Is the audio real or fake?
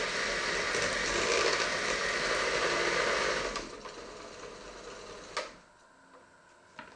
real